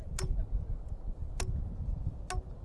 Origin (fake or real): real